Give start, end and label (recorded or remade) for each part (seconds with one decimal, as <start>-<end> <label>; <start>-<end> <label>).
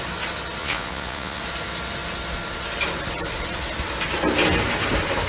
0.0-0.6 recorded; 0.6-1.4 remade; 1.4-5.3 recorded